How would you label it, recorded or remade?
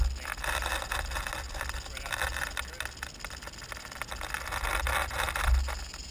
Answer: recorded